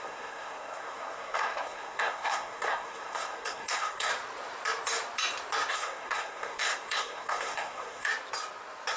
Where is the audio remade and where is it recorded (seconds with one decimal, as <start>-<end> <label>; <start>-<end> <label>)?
0.0-4.1 remade; 4.1-5.7 recorded; 5.7-8.1 remade; 8.1-9.0 recorded